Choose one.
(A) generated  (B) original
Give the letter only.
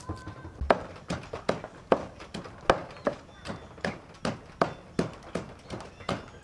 B